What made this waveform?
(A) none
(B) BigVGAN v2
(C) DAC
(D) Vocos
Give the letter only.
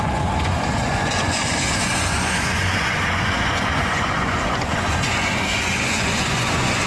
D